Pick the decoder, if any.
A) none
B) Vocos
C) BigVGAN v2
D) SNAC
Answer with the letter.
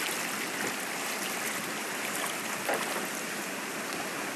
A